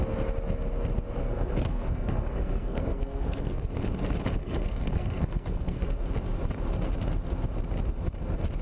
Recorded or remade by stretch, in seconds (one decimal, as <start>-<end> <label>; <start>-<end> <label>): 0.0-1.2 recorded; 1.2-3.6 remade; 3.6-4.4 recorded; 4.4-6.0 remade; 6.0-8.6 recorded